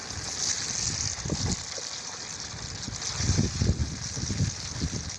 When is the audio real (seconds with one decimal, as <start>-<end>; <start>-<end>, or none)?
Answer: 0.0-5.2